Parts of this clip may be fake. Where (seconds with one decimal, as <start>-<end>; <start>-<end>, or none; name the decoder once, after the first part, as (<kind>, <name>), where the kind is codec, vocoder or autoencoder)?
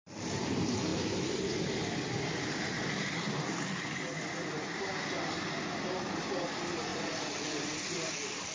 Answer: none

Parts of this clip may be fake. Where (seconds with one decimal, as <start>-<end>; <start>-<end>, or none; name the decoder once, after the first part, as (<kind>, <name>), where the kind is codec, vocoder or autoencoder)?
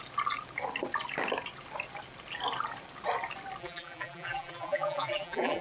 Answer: 3.6-5.6 (vocoder, BigVGAN v2)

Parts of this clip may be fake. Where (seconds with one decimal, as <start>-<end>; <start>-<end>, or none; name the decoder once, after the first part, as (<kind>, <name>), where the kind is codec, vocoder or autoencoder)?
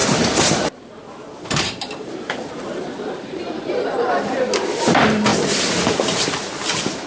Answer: 0.0-4.0 (vocoder, BigVGAN v2); 5.3-7.1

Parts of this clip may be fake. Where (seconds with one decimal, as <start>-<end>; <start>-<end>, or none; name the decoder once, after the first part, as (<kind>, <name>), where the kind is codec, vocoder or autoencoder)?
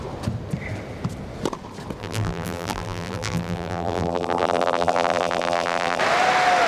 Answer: 2.0-6.0 (vocoder, BigVGAN v2)